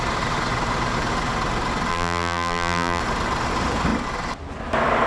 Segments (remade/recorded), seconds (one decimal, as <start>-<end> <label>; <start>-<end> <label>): 0.0-1.9 recorded; 1.9-3.0 remade; 3.0-5.1 recorded